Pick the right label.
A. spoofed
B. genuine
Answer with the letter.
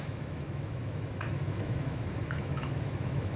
A